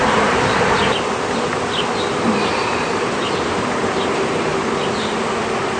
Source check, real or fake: real